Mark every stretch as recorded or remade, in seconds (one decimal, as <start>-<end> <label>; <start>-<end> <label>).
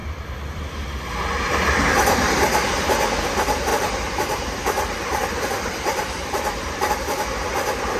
0.0-0.7 remade; 0.7-3.7 recorded; 3.7-6.9 remade; 6.9-8.0 recorded